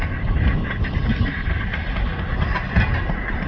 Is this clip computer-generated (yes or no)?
no